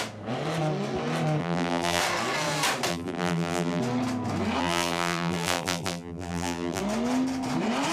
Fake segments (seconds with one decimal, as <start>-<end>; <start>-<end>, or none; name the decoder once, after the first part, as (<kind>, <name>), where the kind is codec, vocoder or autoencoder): 1.4-2.0 (vocoder, BigVGAN v2); 2.9-3.8; 4.6-6.8